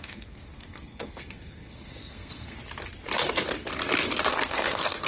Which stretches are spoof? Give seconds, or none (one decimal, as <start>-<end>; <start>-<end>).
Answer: 0.0-2.6; 4.3-5.1